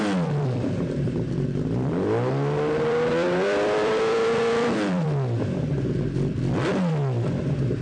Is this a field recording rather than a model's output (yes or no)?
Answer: no